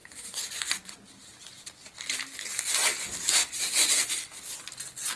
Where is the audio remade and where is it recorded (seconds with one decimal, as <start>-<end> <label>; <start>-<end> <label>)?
0.0-1.1 remade; 1.1-3.4 recorded; 3.4-4.1 remade; 4.1-5.2 recorded